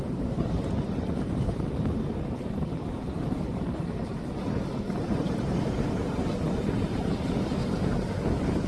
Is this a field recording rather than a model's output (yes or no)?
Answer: no